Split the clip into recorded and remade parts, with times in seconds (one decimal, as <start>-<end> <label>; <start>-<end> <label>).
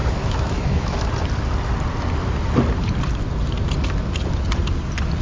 0.0-1.1 remade; 1.1-5.2 recorded